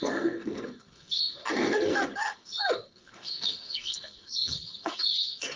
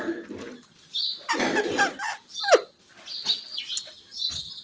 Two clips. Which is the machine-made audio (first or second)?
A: first